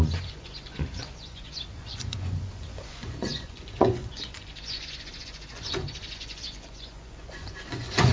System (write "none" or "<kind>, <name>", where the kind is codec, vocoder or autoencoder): vocoder, Vocos